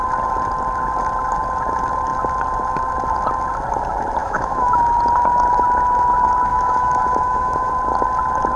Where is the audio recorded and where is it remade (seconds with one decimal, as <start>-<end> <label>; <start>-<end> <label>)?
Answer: 0.0-4.2 recorded; 4.2-4.8 remade; 4.8-6.5 recorded; 6.5-7.7 remade; 7.7-8.6 recorded